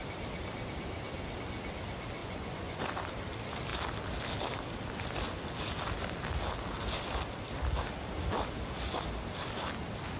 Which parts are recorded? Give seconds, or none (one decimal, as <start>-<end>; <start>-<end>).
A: 0.0-2.2; 2.8-10.2